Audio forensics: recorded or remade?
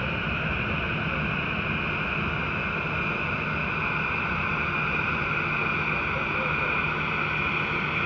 recorded